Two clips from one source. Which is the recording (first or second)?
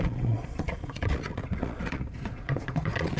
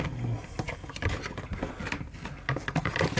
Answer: second